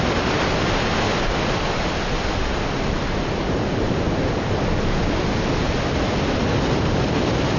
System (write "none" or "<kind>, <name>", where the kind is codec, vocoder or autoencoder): none